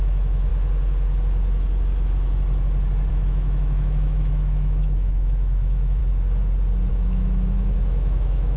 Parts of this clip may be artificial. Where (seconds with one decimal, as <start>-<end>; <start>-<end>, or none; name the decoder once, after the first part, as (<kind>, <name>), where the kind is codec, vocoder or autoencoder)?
0.0-0.5 (autoencoder, DAC-VAE); 3.1-6.0; 6.9-8.6